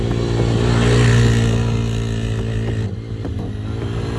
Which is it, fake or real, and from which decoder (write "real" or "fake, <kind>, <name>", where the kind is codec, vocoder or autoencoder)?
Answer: real